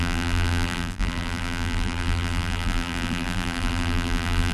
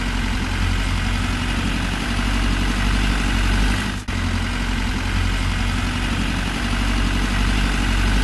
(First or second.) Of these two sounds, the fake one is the first